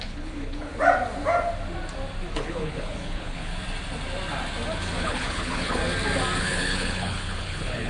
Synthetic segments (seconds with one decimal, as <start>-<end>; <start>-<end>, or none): 0.0-0.7; 2.3-3.5; 5.0-5.8; 6.4-7.9